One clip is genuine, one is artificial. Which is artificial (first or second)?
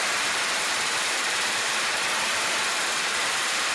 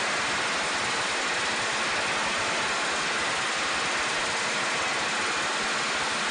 first